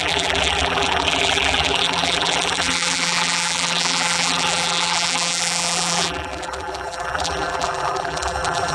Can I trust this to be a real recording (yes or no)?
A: no